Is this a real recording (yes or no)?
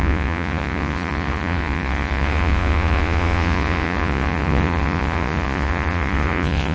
no